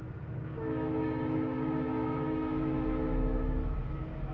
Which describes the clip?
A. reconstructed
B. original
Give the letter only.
A